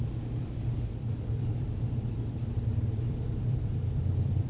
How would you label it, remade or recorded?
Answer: remade